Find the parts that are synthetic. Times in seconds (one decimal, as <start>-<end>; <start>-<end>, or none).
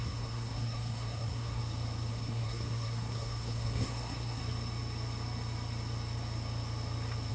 0.0-1.6; 2.1-4.4